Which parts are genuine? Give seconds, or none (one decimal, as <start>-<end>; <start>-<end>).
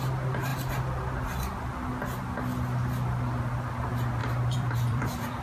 0.0-4.2